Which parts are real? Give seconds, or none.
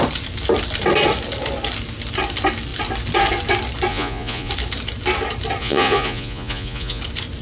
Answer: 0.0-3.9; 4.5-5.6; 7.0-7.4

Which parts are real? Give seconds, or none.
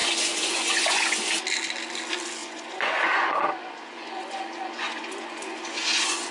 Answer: 1.3-2.4